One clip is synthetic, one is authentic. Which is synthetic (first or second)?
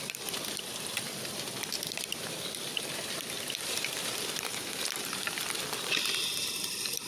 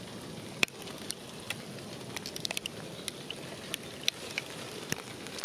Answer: first